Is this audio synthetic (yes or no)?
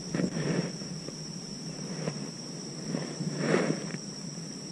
yes